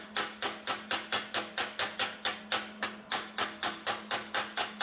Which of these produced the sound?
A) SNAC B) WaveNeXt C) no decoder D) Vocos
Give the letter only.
C